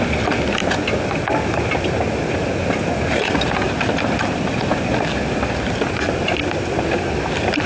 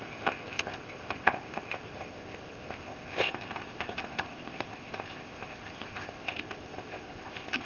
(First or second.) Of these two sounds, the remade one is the second